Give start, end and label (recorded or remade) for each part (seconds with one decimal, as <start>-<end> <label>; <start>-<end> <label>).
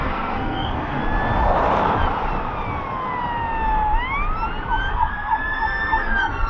0.0-1.0 remade; 1.0-4.9 recorded; 4.9-6.5 remade